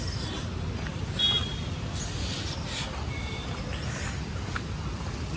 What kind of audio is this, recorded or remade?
recorded